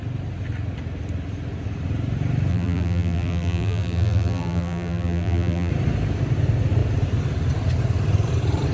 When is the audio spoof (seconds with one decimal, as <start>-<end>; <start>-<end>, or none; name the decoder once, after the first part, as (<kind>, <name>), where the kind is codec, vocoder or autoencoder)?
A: 2.5-5.7 (vocoder, BigVGAN v2)